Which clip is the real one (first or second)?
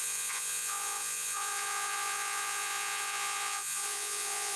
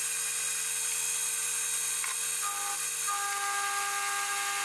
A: second